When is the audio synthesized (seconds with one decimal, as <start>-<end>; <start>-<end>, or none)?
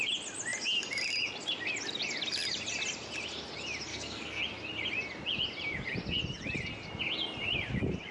3.9-4.4